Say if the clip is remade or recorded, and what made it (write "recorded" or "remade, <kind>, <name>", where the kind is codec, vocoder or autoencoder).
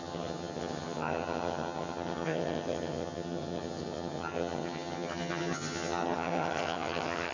remade, vocoder, HiFi-GAN